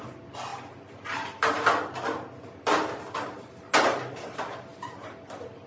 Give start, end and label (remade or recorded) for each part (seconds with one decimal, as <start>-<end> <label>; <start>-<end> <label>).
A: 0.0-4.7 recorded; 4.7-5.7 remade